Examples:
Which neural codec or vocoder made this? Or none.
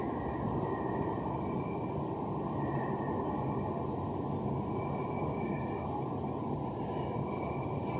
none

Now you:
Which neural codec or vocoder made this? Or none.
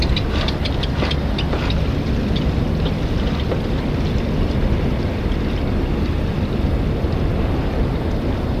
none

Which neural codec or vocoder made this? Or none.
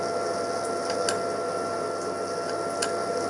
none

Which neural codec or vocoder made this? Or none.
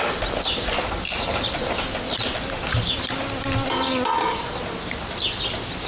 none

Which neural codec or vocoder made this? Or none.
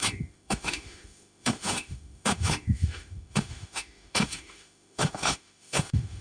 autoencoder, DAC-VAE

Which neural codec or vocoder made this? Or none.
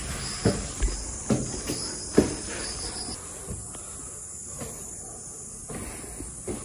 none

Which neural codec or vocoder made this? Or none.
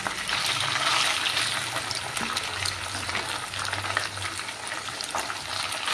none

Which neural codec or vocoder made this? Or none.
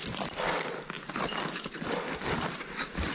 none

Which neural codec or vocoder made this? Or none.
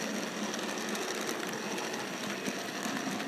none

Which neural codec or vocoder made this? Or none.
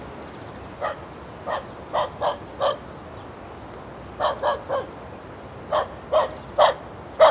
none